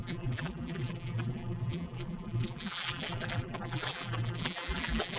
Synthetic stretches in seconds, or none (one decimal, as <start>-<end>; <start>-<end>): 0.0-5.2